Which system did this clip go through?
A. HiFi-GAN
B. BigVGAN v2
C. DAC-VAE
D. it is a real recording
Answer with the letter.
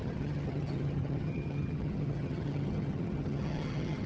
A